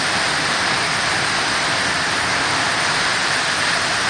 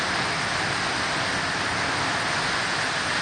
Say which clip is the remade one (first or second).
first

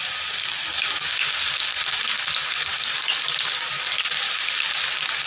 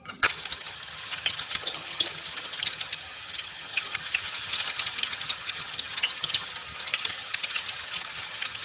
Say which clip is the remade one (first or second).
second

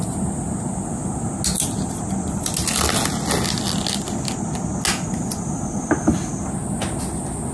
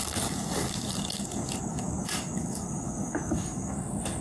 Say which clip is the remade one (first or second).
second